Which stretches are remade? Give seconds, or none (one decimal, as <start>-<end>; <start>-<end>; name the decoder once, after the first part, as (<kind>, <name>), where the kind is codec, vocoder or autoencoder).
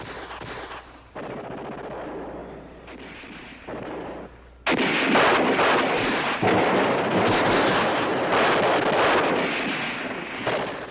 none